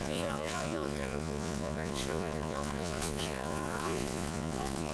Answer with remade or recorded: remade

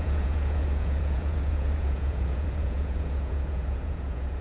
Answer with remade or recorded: remade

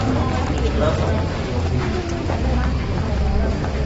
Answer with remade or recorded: recorded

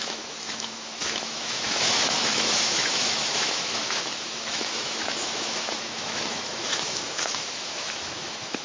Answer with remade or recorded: remade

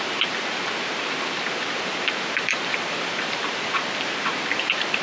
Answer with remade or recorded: remade